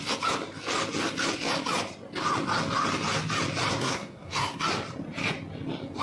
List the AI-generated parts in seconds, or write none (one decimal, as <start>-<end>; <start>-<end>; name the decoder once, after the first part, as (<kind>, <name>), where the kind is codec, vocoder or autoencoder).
3.7-4.6 (codec, SNAC)